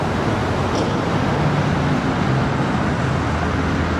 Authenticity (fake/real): real